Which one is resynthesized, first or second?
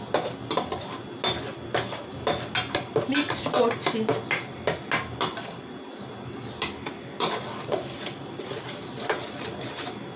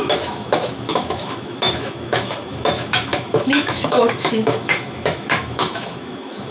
second